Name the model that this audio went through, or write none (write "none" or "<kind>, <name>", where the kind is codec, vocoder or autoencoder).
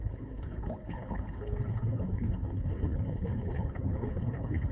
codec, HILCodec